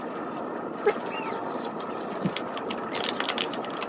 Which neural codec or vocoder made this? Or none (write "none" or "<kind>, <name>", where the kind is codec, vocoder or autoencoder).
none